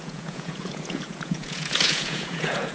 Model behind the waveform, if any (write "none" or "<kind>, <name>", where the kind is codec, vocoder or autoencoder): vocoder, Vocos